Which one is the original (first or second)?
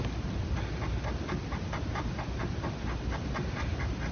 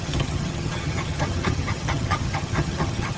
first